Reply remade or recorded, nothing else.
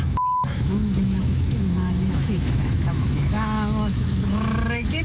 remade